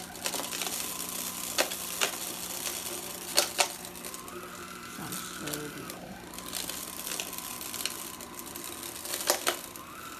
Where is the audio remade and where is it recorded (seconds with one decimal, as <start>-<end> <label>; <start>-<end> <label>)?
0.0-10.2 recorded